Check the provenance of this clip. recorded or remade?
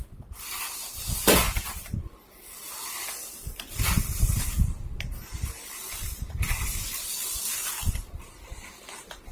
remade